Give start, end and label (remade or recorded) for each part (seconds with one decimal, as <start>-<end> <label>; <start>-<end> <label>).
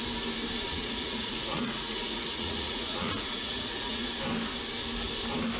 0.0-0.7 recorded; 0.7-4.1 remade; 4.1-5.6 recorded